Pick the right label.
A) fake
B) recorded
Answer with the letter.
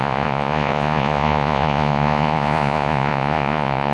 A